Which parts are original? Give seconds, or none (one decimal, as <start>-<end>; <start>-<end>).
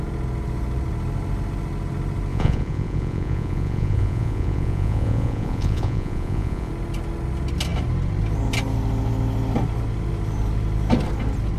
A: 0.0-2.3; 6.7-11.6